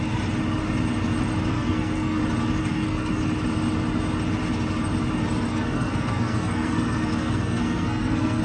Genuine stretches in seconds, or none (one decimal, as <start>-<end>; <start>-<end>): 0.0-1.5; 2.2-2.6; 3.2-5.5